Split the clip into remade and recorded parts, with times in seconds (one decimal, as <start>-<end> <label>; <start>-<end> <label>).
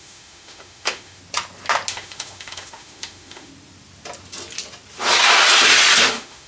0.0-1.2 remade; 1.2-1.9 recorded; 1.9-3.5 remade; 3.5-6.1 recorded; 6.1-6.5 remade